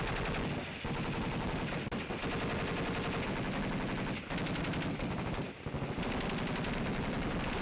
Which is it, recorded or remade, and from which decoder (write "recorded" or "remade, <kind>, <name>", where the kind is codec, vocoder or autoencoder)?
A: recorded